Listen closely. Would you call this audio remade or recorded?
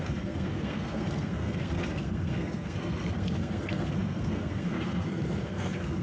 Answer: remade